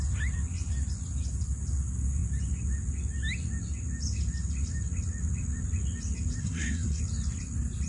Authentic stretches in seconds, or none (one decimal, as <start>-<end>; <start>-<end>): 0.0-6.4; 7.0-7.9